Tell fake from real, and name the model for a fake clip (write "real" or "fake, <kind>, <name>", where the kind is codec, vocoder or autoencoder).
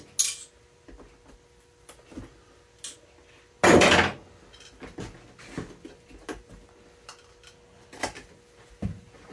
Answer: real